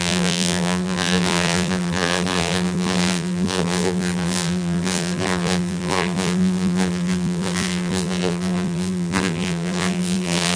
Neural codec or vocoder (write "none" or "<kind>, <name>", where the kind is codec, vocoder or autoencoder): vocoder, BigVGAN v2